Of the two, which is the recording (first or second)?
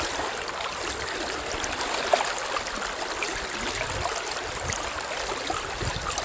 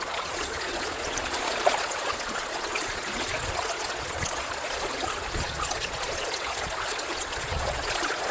first